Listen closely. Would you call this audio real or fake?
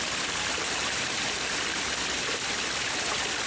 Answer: fake